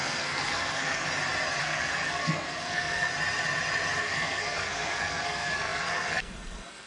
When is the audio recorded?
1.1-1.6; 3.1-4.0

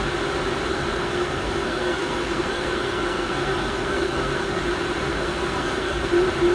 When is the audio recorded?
0.0-0.7; 4.6-5.1; 6.1-6.5

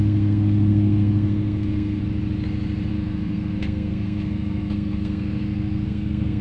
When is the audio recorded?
2.0-2.9